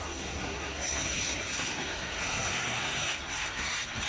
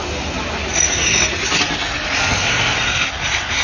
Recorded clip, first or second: second